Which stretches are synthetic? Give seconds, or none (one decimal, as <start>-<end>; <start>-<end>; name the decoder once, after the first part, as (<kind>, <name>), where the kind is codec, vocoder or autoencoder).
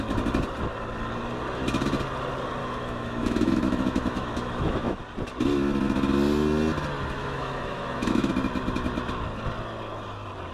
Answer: 2.6-5.0 (autoencoder, DAC-VAE); 7.2-8.3